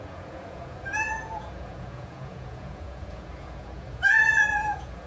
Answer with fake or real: fake